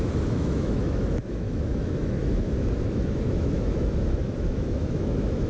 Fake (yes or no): yes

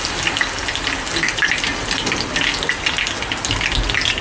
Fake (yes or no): no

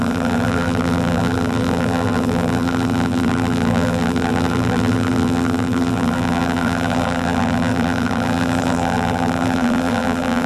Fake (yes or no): yes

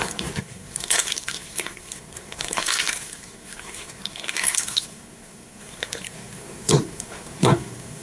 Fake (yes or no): yes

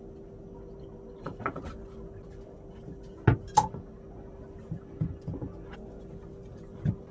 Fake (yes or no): no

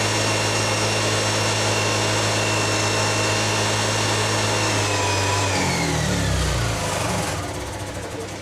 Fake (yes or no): no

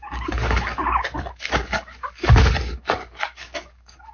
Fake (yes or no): yes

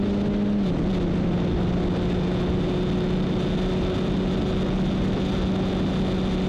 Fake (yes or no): no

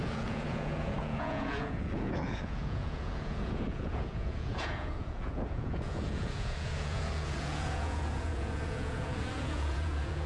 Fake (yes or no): yes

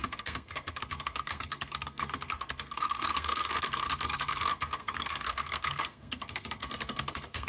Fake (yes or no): yes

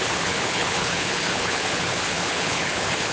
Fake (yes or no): yes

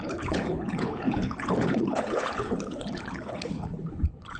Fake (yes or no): yes